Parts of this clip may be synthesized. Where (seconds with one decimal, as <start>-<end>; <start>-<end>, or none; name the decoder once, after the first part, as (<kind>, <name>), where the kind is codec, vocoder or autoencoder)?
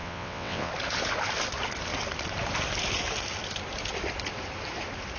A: 0.0-0.7 (vocoder, WaveNeXt)